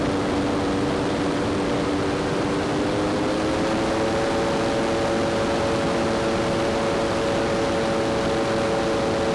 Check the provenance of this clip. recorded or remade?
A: recorded